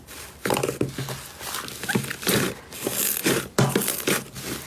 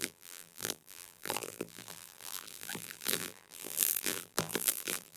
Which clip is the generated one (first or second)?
second